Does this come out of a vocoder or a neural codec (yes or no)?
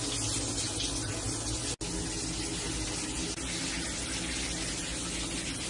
no